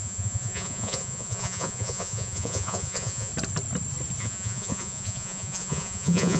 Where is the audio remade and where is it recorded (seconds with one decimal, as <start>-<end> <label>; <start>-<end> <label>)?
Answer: 0.0-3.3 remade; 3.3-4.2 recorded; 4.2-6.4 remade